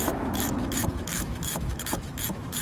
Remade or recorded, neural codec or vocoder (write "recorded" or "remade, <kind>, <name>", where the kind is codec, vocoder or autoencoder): remade, autoencoder, DAC-VAE